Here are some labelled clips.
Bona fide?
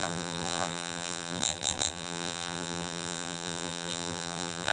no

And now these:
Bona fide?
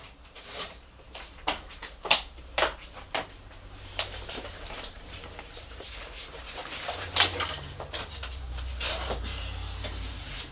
no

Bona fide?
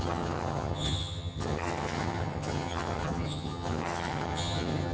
no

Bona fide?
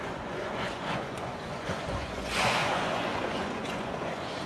no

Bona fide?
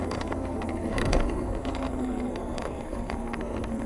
no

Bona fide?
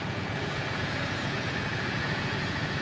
no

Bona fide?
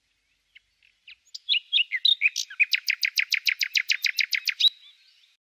yes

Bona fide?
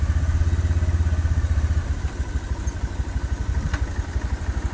yes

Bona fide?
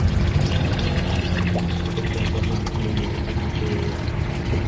yes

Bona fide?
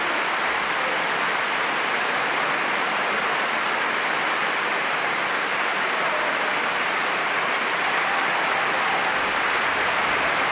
no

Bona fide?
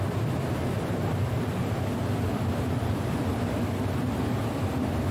yes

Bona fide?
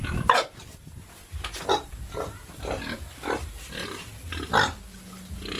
yes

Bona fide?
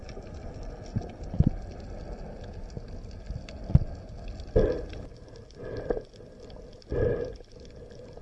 yes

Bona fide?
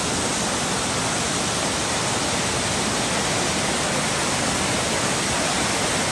yes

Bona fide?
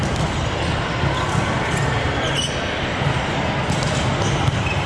yes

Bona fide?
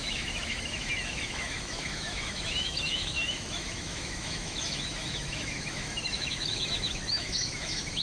no